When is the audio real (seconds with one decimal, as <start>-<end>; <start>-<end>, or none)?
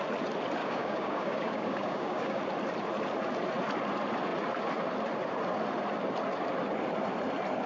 0.0-0.6; 2.4-7.7